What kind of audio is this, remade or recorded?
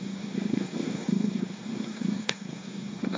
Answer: remade